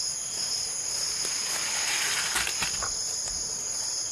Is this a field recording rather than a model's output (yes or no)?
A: yes